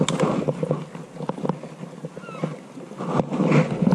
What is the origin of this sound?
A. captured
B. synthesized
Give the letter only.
A